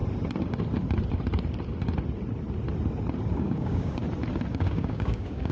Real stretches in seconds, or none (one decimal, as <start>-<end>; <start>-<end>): 0.0-3.3; 4.0-4.5